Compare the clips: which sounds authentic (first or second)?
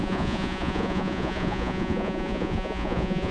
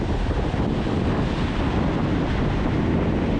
second